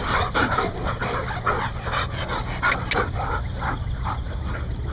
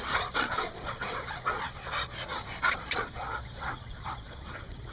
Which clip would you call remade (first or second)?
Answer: second